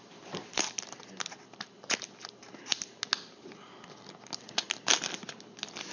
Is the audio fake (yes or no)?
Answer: no